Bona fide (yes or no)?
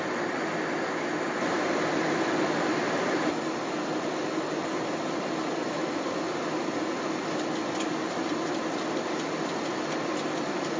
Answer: yes